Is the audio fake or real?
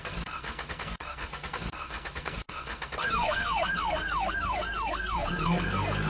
fake